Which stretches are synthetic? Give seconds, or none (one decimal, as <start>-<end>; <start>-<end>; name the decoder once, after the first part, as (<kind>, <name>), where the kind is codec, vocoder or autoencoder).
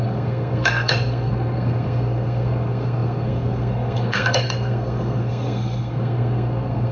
0.0-6.9 (codec, SNAC)